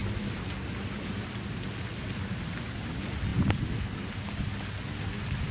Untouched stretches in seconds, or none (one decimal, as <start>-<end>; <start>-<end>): 0.0-5.5